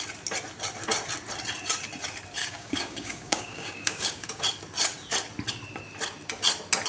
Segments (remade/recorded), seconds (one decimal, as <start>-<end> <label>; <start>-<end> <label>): 0.0-2.4 recorded; 2.4-4.4 remade; 4.4-6.9 recorded